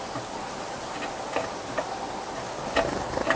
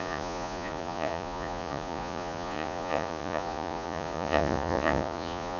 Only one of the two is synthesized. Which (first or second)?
second